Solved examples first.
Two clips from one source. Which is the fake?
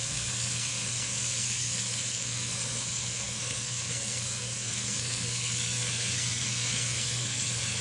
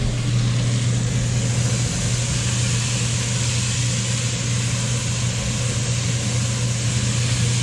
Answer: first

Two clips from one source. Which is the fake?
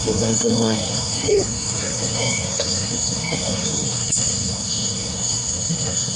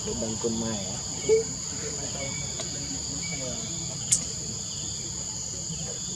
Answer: first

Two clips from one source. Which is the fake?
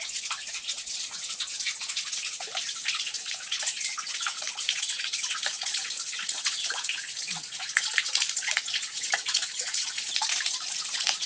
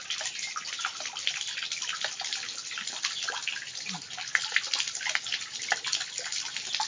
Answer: first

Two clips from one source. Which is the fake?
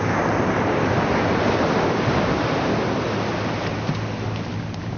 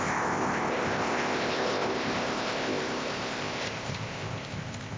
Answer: second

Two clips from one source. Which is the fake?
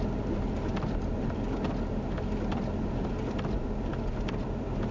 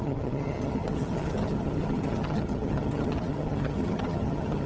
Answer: second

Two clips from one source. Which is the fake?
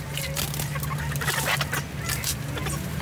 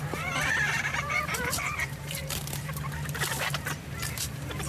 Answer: second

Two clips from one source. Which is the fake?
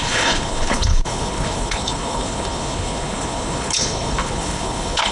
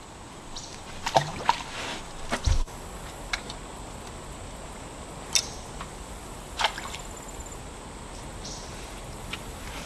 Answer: first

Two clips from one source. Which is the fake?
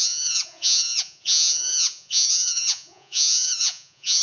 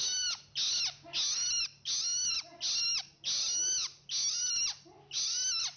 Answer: first